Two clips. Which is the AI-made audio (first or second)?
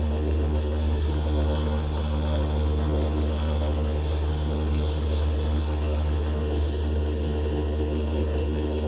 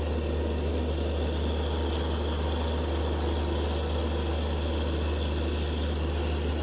first